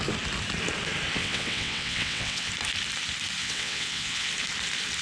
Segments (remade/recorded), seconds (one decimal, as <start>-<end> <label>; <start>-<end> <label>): 0.0-1.2 recorded; 1.2-2.5 remade; 2.5-3.4 recorded; 3.4-4.3 remade; 4.3-5.0 recorded